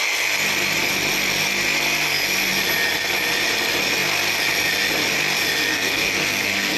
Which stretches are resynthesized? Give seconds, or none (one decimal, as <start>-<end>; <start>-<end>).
5.7-6.8